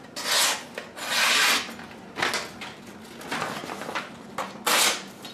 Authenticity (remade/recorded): recorded